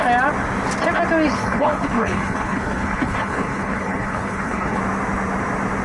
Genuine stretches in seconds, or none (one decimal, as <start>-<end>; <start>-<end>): 0.0-1.3; 4.8-5.8